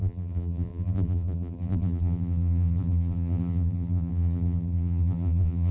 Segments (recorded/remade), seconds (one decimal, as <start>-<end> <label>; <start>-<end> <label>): 0.0-5.7 remade